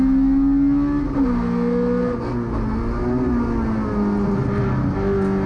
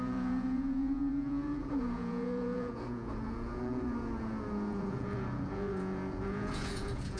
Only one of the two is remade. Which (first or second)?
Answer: second